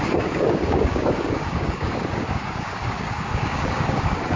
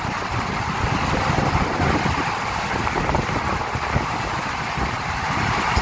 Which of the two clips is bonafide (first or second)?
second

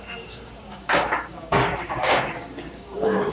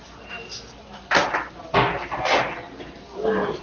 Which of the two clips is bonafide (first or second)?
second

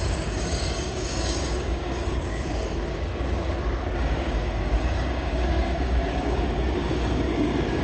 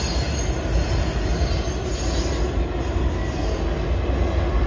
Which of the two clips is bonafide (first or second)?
second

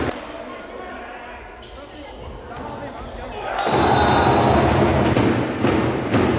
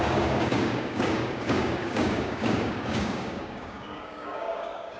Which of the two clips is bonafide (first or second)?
first